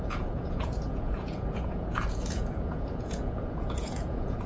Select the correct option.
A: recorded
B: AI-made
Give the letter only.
B